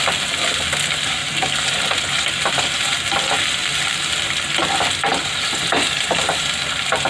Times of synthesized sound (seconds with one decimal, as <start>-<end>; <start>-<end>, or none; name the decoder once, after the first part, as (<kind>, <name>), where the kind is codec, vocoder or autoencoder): 5.1-5.6 (vocoder, BigVGAN v2)